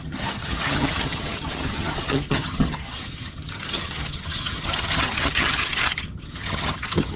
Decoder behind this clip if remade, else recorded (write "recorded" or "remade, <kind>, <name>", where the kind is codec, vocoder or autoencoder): remade, vocoder, HiFi-GAN